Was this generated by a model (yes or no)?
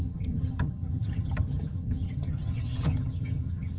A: yes